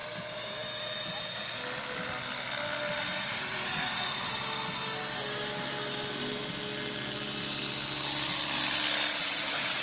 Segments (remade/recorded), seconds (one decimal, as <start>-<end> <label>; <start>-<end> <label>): 0.0-3.1 recorded; 3.1-4.4 remade; 4.4-9.2 recorded; 9.2-9.8 remade